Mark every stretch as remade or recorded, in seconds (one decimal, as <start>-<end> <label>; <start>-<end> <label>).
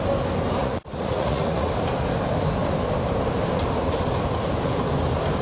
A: 0.0-0.6 recorded; 0.6-1.7 remade; 1.7-5.4 recorded